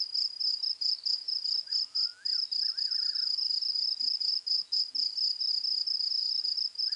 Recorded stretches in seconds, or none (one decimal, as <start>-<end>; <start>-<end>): 0.0-7.0